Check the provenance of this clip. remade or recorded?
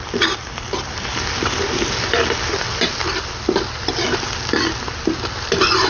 remade